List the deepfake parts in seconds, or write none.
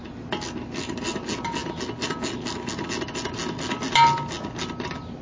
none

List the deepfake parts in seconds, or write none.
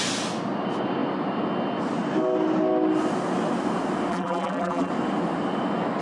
4.1-4.9 (vocoder, BigVGAN v2)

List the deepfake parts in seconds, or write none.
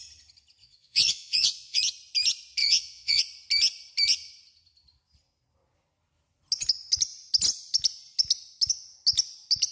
0.6-1.8 (vocoder, Vocos); 2.6-3.2